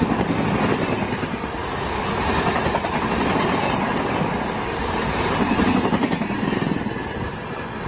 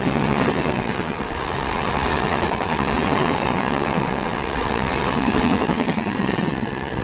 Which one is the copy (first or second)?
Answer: second